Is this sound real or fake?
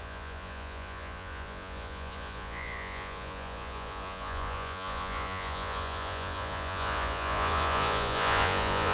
fake